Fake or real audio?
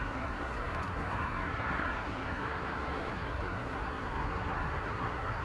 fake